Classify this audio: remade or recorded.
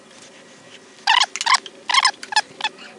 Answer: recorded